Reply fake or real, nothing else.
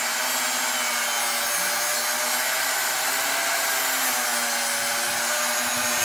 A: real